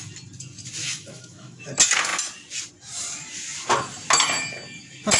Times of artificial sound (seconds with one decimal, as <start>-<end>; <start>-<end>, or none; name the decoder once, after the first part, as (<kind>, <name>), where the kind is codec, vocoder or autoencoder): 0.8-1.7 (autoencoder, DAC-VAE)